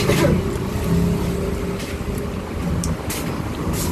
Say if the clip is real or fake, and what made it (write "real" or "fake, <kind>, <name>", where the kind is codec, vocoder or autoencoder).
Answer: real